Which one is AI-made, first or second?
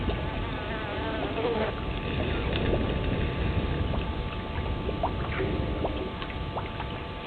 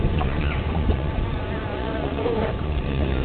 second